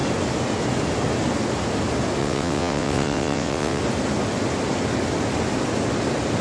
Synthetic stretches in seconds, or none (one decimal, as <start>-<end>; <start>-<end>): 2.2-3.8